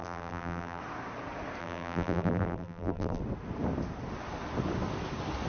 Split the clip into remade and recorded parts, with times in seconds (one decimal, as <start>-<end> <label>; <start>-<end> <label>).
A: 0.0-0.8 remade; 0.8-1.6 recorded; 1.6-3.2 remade; 3.2-5.5 recorded